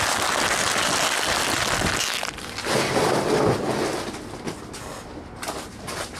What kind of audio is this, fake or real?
real